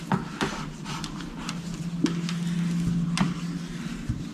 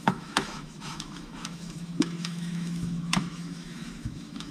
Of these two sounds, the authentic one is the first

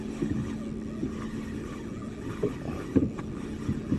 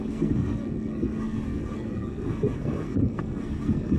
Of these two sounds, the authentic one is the first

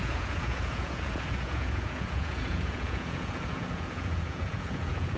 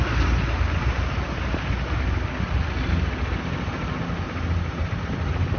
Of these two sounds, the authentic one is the second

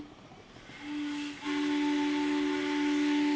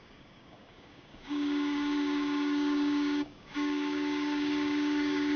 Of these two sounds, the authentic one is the first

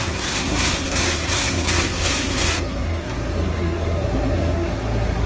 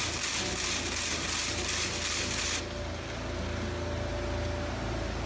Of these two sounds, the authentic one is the second